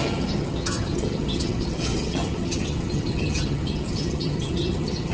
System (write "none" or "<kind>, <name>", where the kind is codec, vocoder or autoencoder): vocoder, HiFi-GAN